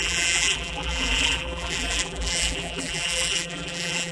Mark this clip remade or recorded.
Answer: remade